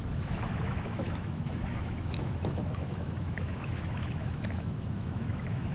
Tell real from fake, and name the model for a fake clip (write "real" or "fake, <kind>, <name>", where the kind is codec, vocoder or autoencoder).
fake, autoencoder, DAC-VAE